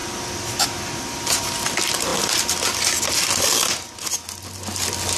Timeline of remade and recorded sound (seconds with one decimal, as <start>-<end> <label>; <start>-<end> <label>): 0.0-5.2 recorded